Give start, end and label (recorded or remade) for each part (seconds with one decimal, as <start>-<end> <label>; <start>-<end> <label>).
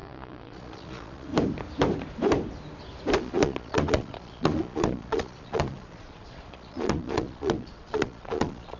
0.0-1.3 remade; 1.3-3.2 recorded; 3.2-8.8 remade